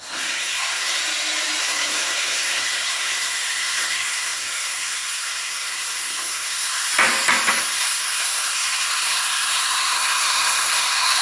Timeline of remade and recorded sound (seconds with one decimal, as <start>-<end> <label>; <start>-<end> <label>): 0.0-1.0 remade; 1.0-1.6 recorded; 1.6-6.9 remade; 6.9-7.6 recorded; 7.6-11.2 remade